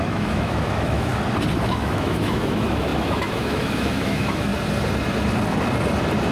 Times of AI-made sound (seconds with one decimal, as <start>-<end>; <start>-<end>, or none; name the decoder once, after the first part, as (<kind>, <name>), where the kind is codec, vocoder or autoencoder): 0.0-1.1 (autoencoder, DAC-VAE); 1.6-4.5